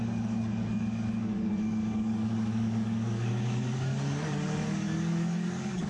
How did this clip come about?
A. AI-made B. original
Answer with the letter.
A